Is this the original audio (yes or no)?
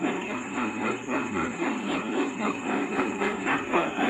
no